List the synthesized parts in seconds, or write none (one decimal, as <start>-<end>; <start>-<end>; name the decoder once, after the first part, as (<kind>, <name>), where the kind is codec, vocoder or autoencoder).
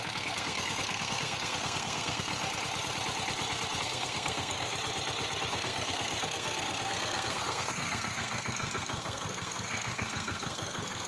0.0-2.3 (codec, SNAC); 3.8-4.7; 5.5-11.1